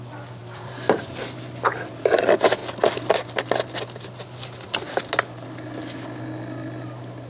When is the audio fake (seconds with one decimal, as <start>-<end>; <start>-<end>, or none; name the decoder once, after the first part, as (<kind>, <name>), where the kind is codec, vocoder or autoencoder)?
0.4-1.0 (vocoder, BigVGAN v2)